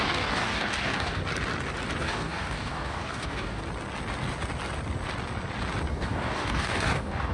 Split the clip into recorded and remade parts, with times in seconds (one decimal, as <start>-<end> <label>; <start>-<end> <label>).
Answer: 0.0-1.2 remade; 1.2-2.0 recorded; 2.0-3.6 remade; 3.6-5.9 recorded; 5.9-7.3 remade